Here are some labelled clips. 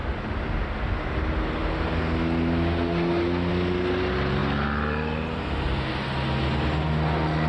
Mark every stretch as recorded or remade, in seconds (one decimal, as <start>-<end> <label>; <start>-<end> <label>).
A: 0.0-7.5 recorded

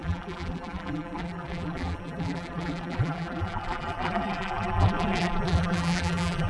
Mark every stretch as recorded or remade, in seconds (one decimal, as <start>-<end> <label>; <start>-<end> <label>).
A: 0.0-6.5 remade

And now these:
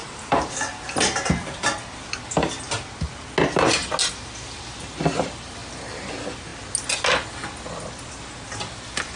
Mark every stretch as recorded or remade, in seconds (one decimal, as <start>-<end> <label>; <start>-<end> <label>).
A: 0.0-0.5 remade; 0.5-9.2 recorded